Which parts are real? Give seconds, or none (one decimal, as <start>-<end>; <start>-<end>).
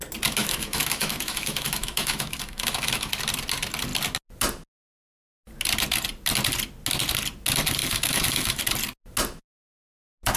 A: 0.0-0.4; 3.1-7.8; 8.6-10.4